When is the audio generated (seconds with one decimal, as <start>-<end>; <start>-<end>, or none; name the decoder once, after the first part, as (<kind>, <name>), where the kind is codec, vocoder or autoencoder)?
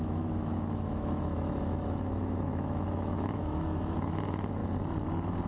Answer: 0.0-4.6 (autoencoder, DAC-VAE)